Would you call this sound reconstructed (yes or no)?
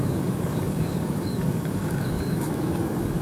yes